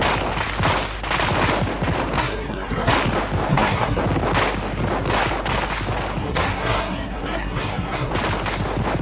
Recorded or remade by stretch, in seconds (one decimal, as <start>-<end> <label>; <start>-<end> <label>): 0.0-2.2 recorded; 2.2-2.9 remade; 2.9-3.5 recorded; 3.5-4.0 remade; 4.0-6.2 recorded; 6.2-8.1 remade; 8.1-9.0 recorded